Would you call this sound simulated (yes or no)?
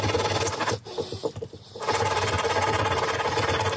no